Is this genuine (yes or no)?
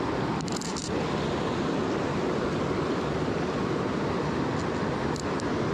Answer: yes